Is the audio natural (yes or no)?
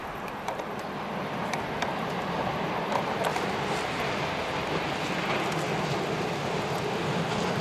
yes